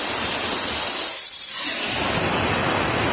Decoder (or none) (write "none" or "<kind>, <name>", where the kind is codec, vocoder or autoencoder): none